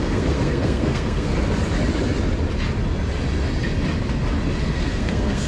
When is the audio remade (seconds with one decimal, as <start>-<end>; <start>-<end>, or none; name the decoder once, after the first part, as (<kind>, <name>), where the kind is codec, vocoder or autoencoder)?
0.0-1.3 (codec, SNAC); 4.6-5.5